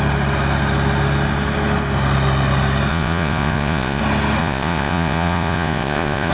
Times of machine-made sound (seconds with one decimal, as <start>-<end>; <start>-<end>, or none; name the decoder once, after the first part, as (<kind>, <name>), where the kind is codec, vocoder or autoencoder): 2.9-4.0 (vocoder, Vocos); 4.4-6.3